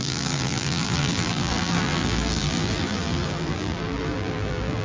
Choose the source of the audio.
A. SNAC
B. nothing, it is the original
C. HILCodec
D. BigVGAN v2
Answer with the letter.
D